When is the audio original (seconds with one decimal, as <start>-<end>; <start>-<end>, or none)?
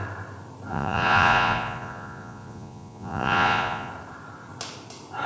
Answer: 0.0-0.7; 3.9-5.3